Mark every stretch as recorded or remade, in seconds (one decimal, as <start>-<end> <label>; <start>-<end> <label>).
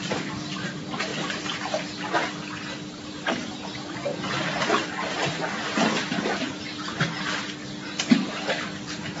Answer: 0.0-9.2 recorded